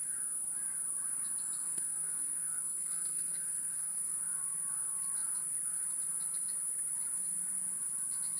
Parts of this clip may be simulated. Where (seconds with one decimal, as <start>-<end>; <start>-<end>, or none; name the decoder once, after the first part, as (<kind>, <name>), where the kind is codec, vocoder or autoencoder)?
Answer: 1.6-4.2 (codec, SNAC)